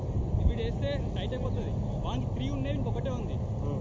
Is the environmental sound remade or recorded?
recorded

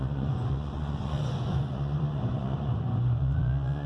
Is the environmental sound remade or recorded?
remade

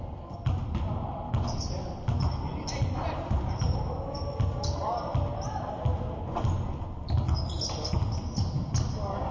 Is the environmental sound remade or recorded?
recorded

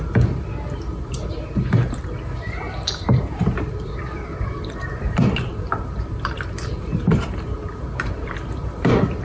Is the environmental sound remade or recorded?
remade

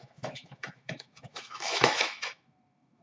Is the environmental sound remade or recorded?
remade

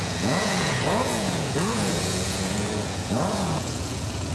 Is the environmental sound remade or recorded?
remade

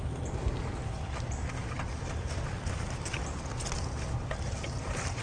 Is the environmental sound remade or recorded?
recorded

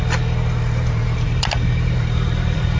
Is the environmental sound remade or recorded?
remade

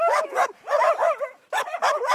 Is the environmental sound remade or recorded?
remade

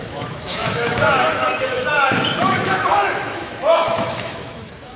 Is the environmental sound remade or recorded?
remade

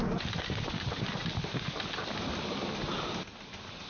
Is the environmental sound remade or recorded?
recorded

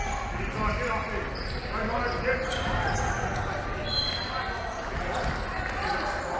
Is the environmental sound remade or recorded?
recorded